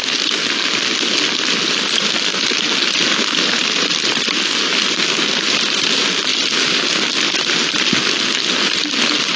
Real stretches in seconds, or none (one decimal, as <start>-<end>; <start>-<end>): 0.0-9.4